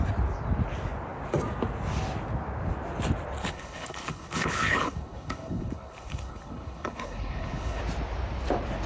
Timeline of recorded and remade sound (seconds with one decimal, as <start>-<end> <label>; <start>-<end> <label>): 0.0-3.4 recorded; 3.4-7.8 remade; 7.8-8.9 recorded